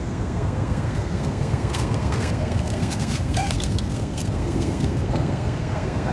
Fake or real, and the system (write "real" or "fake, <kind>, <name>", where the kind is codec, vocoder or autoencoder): fake, codec, SNAC